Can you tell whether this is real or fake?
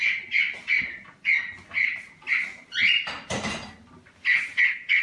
real